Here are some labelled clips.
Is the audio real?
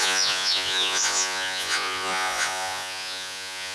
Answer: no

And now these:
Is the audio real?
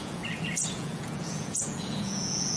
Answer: no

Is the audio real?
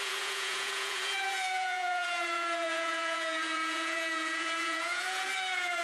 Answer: no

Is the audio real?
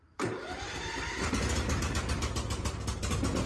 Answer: yes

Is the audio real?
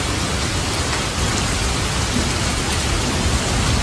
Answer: yes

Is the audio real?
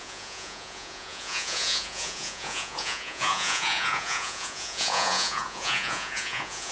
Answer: no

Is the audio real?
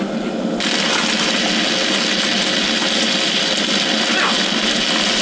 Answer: yes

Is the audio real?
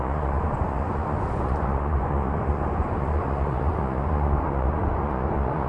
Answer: no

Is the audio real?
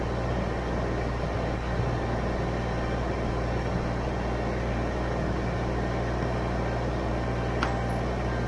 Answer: yes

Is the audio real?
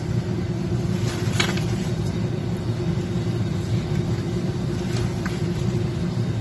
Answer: yes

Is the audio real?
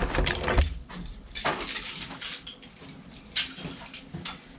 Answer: yes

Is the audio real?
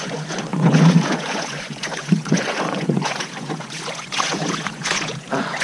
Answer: no